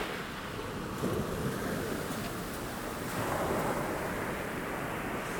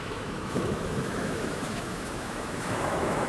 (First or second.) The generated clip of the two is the second